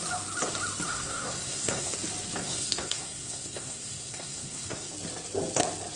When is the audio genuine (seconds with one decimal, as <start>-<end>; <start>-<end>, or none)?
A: 0.0-0.9; 1.9-2.4; 4.9-6.0